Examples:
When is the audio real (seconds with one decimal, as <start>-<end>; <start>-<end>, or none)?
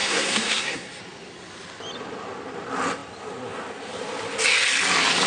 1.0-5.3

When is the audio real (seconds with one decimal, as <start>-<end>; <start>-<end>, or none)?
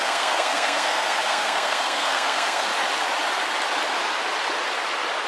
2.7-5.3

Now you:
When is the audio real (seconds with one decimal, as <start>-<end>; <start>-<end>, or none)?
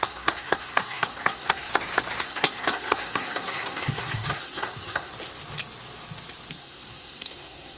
1.7-2.2; 5.1-6.5